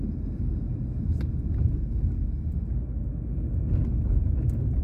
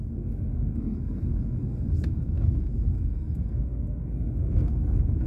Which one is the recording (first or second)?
first